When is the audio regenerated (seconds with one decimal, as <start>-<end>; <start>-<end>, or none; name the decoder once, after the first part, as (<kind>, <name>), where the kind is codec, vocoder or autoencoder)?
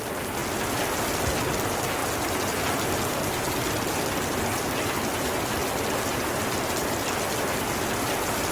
none